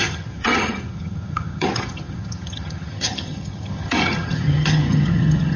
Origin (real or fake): fake